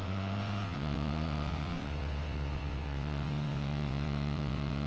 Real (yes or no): no